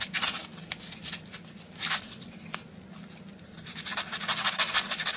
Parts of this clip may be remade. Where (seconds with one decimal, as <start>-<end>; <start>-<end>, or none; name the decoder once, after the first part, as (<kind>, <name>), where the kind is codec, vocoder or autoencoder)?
none